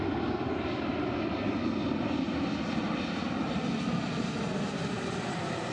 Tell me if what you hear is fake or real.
fake